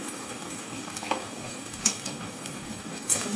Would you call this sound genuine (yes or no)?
no